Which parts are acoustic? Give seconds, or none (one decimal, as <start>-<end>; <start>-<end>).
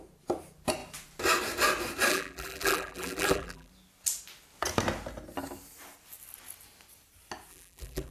0.0-2.1; 3.7-7.5